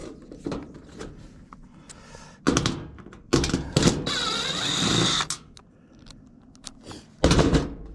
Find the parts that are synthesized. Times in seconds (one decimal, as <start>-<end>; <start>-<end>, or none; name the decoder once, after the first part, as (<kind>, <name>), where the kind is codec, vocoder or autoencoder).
none